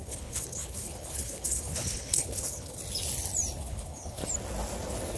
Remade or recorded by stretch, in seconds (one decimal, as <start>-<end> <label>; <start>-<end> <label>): 0.0-2.8 remade; 2.8-3.6 recorded; 3.6-4.2 remade; 4.2-5.2 recorded